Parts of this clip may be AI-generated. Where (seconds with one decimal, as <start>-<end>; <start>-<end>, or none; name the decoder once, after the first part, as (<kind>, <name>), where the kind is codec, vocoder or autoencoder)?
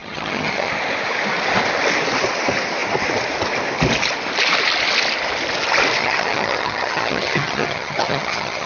0.0-0.7 (vocoder, HiFi-GAN); 6.0-8.7